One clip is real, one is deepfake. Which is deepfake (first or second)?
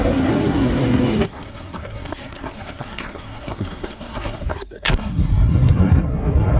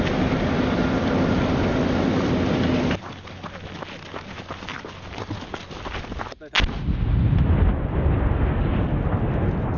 first